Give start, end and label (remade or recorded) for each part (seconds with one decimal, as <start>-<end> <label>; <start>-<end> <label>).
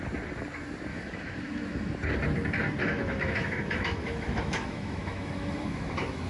0.0-0.9 recorded; 0.9-1.9 remade; 1.9-2.8 recorded; 2.8-6.3 remade